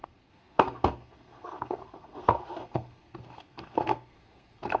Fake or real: fake